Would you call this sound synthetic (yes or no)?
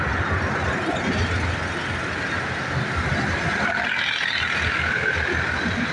no